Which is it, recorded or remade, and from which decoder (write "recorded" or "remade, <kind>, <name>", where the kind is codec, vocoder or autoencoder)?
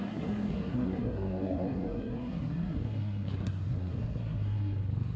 remade, codec, SNAC